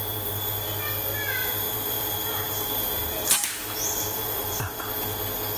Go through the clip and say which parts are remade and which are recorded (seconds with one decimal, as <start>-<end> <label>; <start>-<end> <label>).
0.0-0.5 remade; 0.5-1.4 recorded; 1.4-4.8 remade; 4.8-5.6 recorded